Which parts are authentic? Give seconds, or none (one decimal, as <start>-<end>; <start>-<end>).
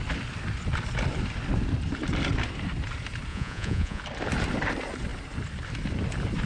0.0-3.3; 4.0-6.5